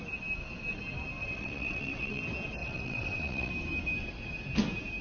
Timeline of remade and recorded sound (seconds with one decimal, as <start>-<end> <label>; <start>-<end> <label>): 0.0-1.2 recorded; 1.2-2.2 remade; 2.2-2.6 recorded; 2.6-3.5 remade; 3.5-5.0 recorded